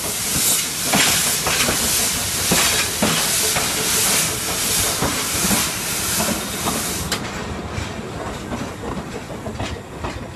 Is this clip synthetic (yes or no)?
no